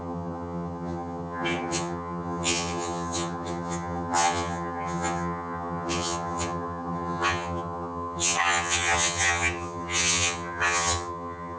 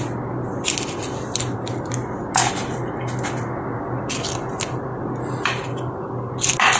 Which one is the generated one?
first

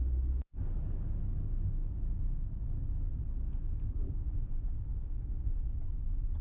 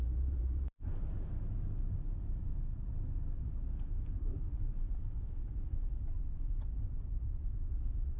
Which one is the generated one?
second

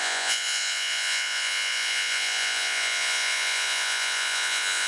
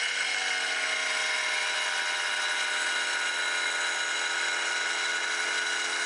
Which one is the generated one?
first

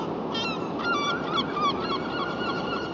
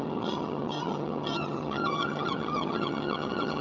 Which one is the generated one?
second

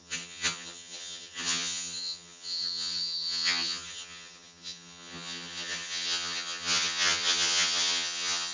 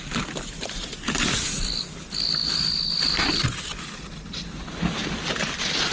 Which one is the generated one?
first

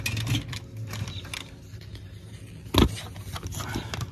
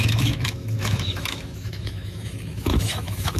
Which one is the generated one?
second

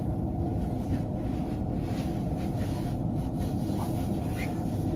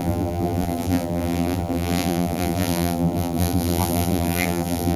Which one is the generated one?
second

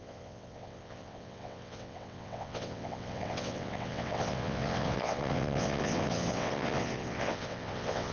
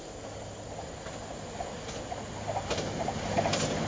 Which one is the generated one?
first